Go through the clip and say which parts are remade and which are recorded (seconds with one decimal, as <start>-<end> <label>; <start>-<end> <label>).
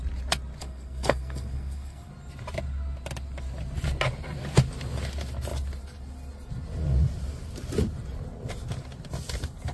0.0-0.6 recorded; 0.6-2.1 remade; 2.1-9.7 recorded